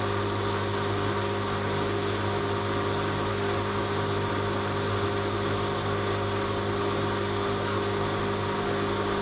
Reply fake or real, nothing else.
real